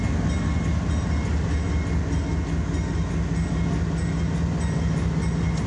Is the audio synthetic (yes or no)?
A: no